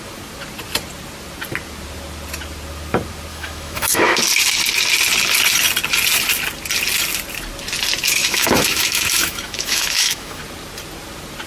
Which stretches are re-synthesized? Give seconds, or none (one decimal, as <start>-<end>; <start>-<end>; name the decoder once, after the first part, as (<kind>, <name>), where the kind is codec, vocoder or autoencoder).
3.3-4.2 (autoencoder, DAC-VAE); 8.2-10.4